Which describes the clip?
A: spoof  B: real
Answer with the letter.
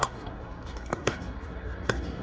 A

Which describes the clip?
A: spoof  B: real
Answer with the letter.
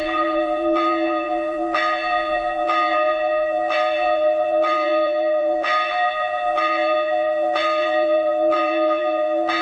A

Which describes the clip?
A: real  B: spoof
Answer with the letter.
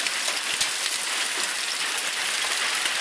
A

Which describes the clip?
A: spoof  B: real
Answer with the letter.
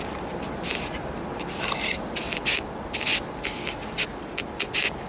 B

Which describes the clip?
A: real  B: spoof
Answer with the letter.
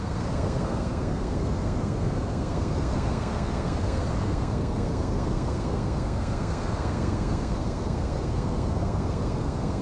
B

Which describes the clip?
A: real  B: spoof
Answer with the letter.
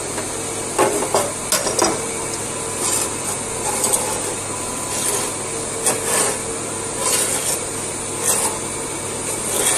A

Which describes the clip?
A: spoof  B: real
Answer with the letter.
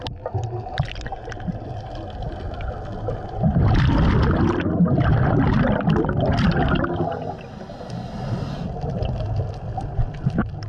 B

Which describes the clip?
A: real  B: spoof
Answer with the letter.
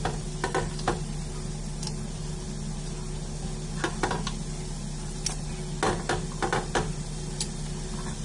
A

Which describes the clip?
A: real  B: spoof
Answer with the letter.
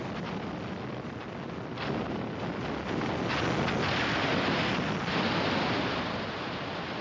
A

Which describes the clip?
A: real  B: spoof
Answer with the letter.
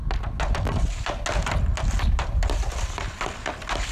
A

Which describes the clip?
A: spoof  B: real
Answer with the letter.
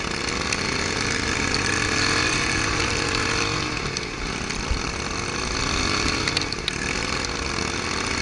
B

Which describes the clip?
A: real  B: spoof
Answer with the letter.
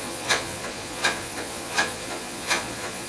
B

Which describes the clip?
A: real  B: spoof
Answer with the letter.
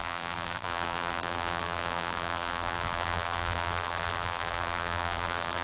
B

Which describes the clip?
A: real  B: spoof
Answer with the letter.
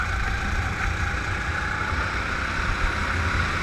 A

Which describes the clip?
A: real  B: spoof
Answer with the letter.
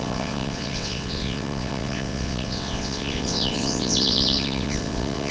B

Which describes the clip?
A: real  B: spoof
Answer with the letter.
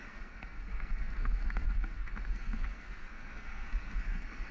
B